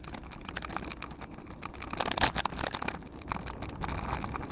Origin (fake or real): real